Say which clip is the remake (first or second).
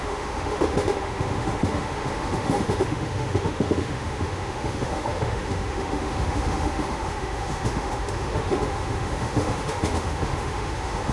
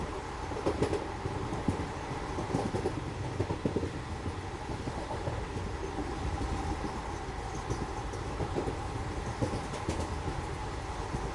first